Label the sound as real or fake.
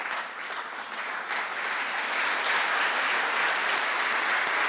real